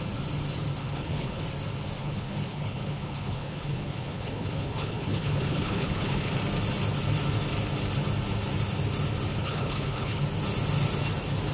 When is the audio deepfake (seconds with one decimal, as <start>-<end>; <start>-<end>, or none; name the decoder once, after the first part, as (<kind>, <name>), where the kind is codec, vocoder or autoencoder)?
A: 0.8-1.4 (codec, HILCodec); 2.0-6.3; 9.3-10.2